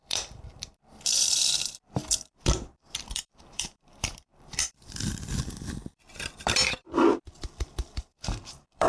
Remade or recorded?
remade